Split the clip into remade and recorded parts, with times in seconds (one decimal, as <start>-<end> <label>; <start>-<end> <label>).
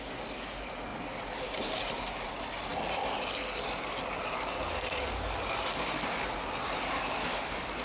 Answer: 0.0-0.9 recorded; 0.9-2.3 remade; 2.3-7.8 recorded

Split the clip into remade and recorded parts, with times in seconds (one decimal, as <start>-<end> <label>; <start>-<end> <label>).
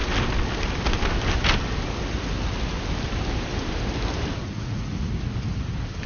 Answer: 0.0-4.4 recorded; 4.4-5.1 remade; 5.1-6.1 recorded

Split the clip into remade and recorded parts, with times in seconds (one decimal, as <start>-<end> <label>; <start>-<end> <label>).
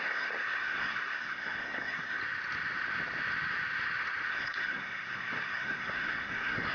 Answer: 0.0-2.2 remade; 2.2-4.3 recorded; 4.3-6.7 remade